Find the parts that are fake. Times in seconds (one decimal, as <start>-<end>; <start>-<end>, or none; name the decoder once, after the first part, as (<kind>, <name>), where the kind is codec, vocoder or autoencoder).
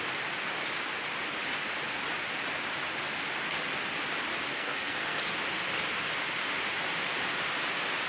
4.5-5.2 (codec, SNAC)